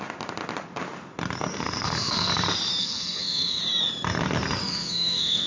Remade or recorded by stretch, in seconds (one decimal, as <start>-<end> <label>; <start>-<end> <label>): 0.0-1.5 recorded; 1.5-2.3 remade; 2.3-2.8 recorded; 2.8-3.6 remade; 3.6-4.6 recorded; 4.6-5.5 remade